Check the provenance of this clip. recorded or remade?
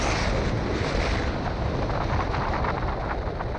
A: recorded